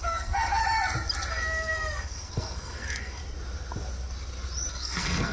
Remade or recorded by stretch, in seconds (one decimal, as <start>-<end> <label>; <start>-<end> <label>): 0.0-0.6 remade; 0.6-1.3 recorded; 1.3-3.2 remade; 3.2-4.7 recorded; 4.7-5.3 remade